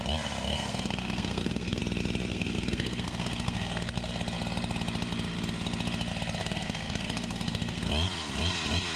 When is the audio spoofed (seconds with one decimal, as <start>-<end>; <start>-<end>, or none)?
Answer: 0.5-1.8; 2.3-4.1; 6.4-7.9